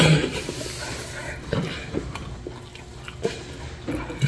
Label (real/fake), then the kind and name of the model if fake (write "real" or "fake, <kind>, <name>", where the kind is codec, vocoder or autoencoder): real